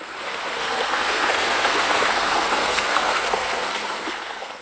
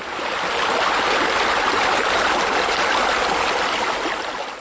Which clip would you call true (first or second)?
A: second